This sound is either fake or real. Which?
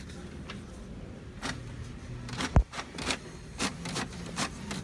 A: real